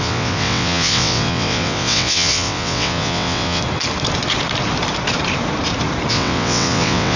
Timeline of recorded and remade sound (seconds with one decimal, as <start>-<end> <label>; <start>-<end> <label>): 0.0-3.6 remade; 3.6-6.1 recorded; 6.1-7.2 remade